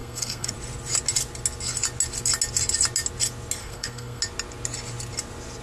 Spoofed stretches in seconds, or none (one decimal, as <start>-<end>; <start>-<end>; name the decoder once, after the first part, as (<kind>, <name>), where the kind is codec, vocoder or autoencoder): 0.0-0.5 (codec, SNAC); 3.6-4.2